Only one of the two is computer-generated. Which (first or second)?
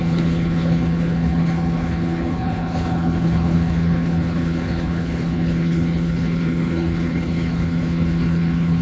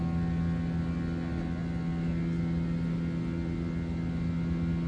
first